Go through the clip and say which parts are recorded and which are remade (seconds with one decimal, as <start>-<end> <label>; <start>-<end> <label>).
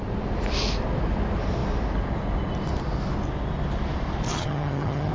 0.0-4.3 recorded; 4.3-5.1 remade